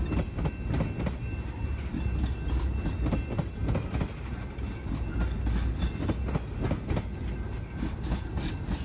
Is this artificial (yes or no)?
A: no